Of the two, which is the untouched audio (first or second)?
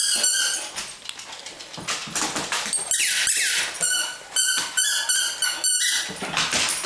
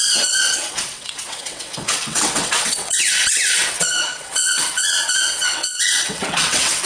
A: first